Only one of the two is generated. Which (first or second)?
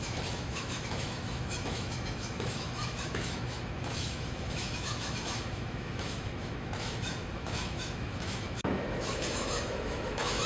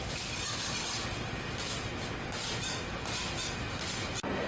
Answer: first